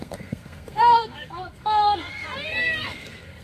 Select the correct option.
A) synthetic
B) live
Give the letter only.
A